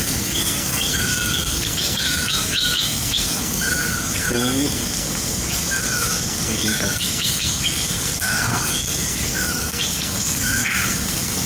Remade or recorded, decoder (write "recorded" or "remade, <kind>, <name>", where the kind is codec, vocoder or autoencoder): remade, codec, SNAC